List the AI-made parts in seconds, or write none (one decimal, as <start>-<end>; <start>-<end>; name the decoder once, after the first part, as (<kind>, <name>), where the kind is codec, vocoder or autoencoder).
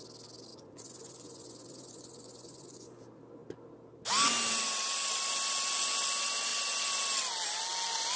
0.5-3.0 (vocoder, Vocos)